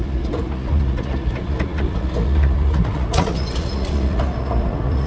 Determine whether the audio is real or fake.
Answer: fake